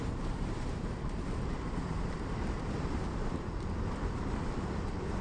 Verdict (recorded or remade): remade